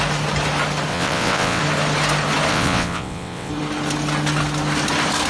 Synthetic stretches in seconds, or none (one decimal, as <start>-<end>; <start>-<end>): 0.9-1.6; 2.5-3.5